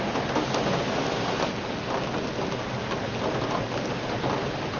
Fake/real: real